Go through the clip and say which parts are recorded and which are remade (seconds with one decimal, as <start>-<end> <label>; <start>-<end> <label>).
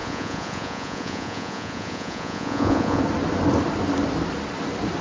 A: 0.0-3.0 remade; 3.0-5.0 recorded